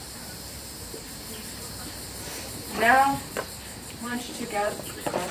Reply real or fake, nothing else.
fake